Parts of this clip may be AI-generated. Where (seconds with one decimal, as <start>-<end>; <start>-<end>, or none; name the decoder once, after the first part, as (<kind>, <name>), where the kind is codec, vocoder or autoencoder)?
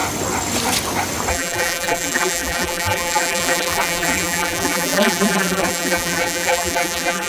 1.3-7.3 (vocoder, BigVGAN v2)